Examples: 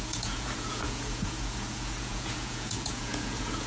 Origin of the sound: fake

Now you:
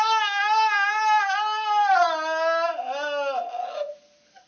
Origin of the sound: real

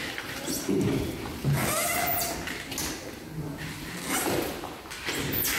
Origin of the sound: real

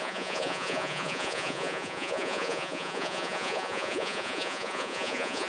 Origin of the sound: fake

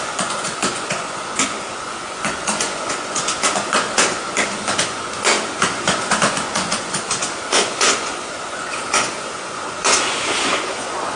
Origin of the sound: fake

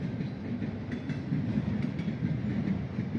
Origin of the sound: real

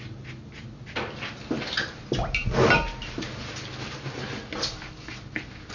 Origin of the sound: real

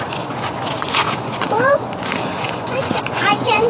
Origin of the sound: fake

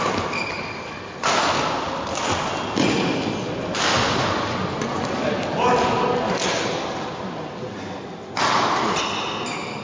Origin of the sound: real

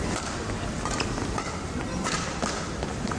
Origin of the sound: real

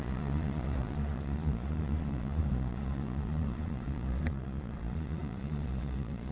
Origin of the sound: fake